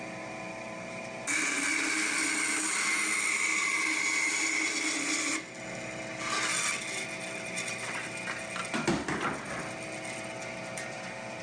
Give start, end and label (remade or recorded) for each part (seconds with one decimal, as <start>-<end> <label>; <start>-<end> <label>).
0.0-11.4 recorded